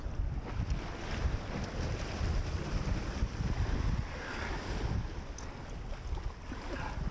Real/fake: real